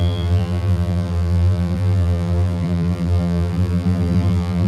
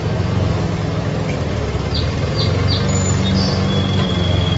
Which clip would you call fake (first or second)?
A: first